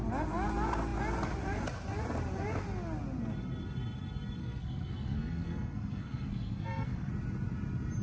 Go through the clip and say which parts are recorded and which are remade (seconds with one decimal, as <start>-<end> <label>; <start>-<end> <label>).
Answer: 0.0-4.4 recorded; 4.4-7.1 remade; 7.1-8.0 recorded